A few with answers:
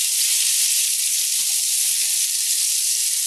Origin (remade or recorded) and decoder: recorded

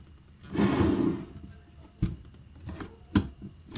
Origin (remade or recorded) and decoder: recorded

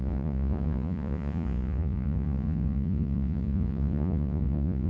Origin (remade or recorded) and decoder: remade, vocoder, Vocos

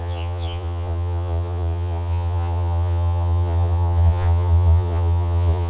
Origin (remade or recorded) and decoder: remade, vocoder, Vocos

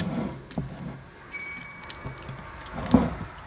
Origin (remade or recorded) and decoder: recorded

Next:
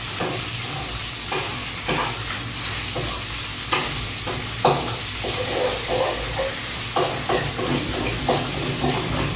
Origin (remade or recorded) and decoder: recorded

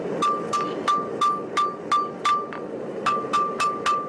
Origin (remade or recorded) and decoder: recorded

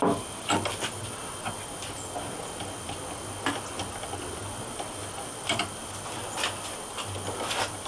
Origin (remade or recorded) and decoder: recorded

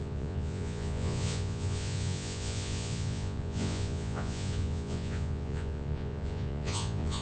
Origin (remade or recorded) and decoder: remade, vocoder, Vocos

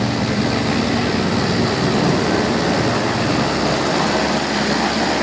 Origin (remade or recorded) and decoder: recorded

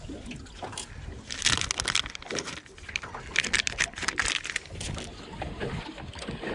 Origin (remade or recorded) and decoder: recorded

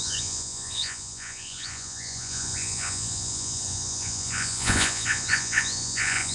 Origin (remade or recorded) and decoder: remade, vocoder, Vocos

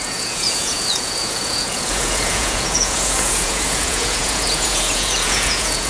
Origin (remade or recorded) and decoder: remade, vocoder, Vocos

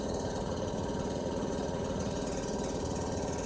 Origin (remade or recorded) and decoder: remade, vocoder, Vocos